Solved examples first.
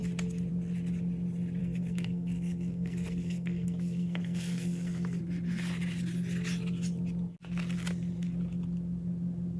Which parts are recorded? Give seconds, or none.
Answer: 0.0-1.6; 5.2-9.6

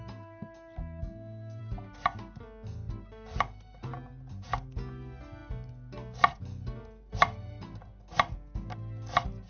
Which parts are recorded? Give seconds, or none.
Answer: 0.0-1.0; 1.6-9.5

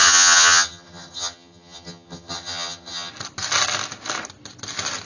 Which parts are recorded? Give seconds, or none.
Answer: 3.1-5.1

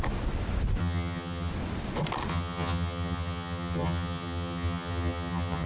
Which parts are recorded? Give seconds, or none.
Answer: 0.0-0.8; 1.5-2.3

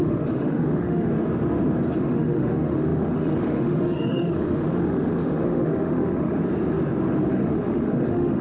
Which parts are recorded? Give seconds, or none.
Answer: 1.1-2.0; 6.4-7.3